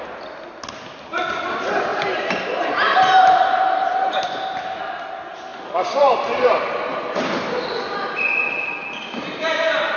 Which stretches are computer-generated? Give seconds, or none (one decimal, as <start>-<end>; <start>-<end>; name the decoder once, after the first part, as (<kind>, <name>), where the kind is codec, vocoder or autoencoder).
1.9-4.6 (vocoder, BigVGAN v2); 5.5-7.3; 8.8-10.0

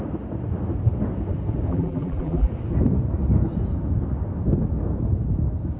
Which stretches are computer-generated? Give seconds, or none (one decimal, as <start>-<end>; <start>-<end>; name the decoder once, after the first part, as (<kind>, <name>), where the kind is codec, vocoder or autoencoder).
1.7-2.5 (vocoder, BigVGAN v2)

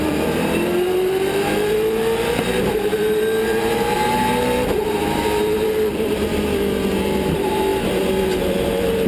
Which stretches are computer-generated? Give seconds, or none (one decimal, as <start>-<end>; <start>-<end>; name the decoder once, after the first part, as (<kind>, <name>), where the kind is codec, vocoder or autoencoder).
0.0-7.7 (vocoder, BigVGAN v2); 8.2-9.1

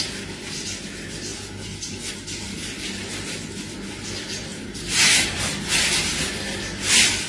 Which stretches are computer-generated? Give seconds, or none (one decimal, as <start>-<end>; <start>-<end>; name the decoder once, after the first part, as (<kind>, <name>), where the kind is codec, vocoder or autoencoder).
4.5-5.4 (vocoder, BigVGAN v2)

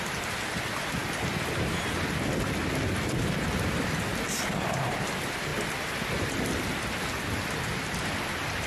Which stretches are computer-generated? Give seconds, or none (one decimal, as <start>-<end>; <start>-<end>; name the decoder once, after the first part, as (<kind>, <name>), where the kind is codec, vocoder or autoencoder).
0.0-1.0 (vocoder, BigVGAN v2); 3.2-5.5; 6.2-8.7

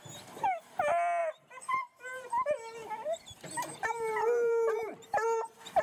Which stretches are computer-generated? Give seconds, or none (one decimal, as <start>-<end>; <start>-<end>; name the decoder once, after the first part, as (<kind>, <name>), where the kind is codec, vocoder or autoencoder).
1.2-1.9 (vocoder, BigVGAN v2); 2.8-5.8

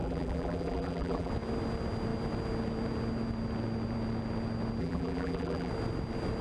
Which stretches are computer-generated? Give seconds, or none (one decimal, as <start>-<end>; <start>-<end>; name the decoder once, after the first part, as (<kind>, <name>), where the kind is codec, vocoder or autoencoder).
0.0-1.3 (vocoder, BigVGAN v2); 4.8-5.7

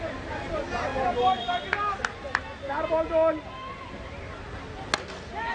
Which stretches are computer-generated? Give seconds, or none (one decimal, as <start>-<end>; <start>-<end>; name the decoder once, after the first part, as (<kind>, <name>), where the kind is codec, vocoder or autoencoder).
none